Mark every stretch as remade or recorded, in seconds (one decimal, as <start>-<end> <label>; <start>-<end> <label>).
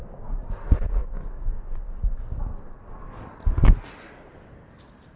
0.0-5.2 recorded